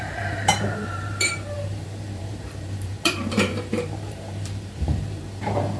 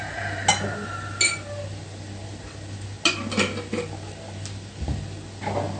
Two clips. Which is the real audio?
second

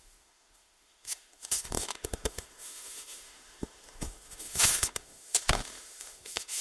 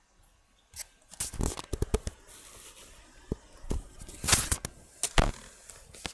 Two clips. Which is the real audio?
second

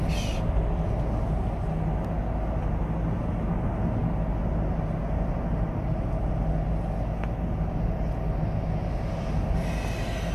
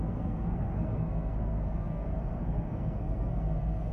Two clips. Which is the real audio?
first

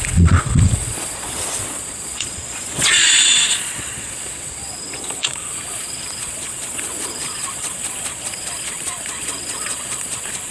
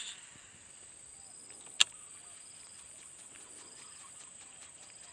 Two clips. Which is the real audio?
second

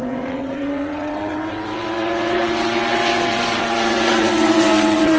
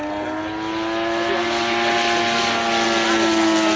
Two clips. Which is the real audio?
second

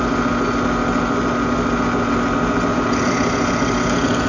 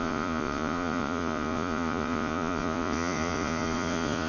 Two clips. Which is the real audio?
first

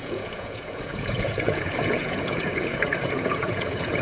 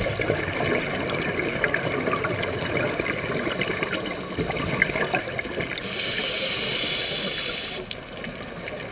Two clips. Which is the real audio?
second